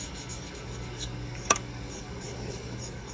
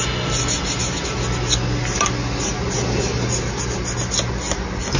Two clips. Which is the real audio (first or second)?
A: second